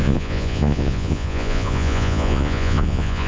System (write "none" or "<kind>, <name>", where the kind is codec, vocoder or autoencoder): vocoder, Vocos